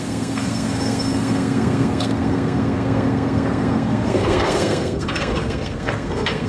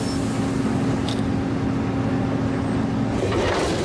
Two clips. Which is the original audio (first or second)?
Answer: second